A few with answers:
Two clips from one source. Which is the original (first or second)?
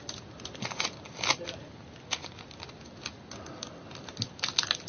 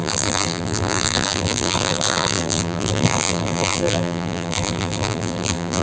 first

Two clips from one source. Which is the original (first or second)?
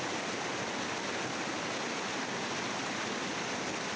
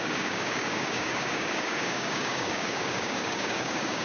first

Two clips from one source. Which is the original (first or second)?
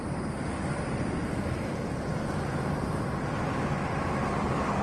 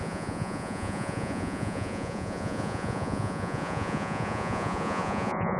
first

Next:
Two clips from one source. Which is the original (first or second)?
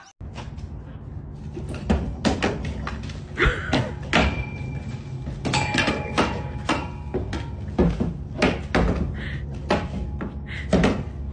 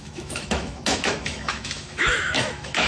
first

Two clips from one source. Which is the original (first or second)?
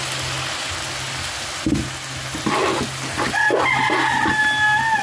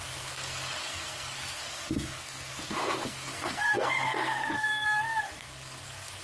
first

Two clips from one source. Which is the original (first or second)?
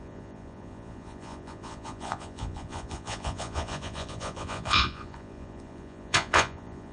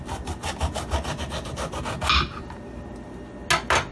second